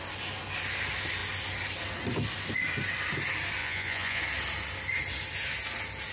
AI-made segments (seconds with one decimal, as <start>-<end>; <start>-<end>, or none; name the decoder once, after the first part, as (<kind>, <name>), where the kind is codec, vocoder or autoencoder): 3.6-4.2 (vocoder, Vocos)